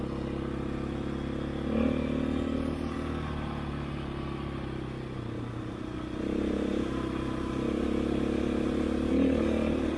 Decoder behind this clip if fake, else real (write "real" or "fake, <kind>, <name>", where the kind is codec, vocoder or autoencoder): real